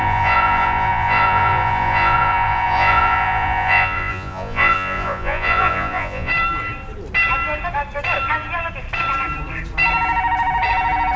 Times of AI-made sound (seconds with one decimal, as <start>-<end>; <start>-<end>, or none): 0.0-6.3

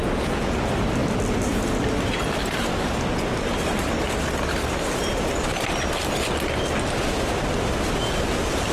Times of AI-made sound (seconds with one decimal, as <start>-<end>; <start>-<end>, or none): 0.0-0.6

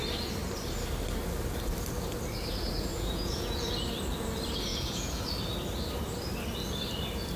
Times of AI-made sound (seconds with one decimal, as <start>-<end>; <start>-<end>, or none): 2.9-3.7; 4.7-5.3

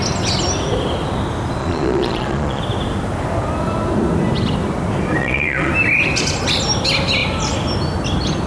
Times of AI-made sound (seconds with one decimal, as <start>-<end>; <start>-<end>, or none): 1.6-2.6; 5.2-5.7

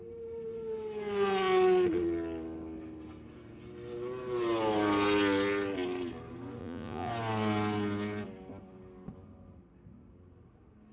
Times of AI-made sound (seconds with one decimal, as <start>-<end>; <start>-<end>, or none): 6.6-7.1

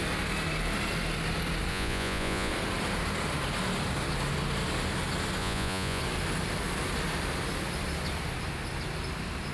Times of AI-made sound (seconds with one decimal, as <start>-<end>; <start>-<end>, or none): 1.7-2.5; 5.4-6.0

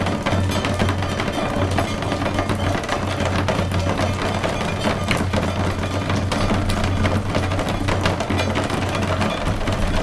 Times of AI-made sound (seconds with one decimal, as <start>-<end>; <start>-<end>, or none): none

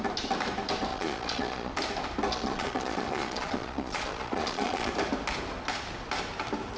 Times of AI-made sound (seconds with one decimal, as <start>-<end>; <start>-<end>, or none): 0.9-1.7; 2.3-4.9